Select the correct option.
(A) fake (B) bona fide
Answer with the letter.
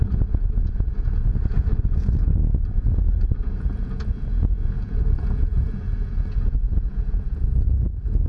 A